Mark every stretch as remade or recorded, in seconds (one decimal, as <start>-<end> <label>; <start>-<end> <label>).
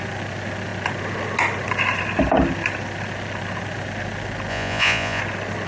0.0-4.5 recorded; 4.5-5.2 remade; 5.2-5.7 recorded